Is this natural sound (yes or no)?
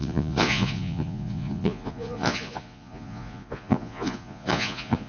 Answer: no